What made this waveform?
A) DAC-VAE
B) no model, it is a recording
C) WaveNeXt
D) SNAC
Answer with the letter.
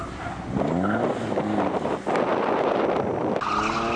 B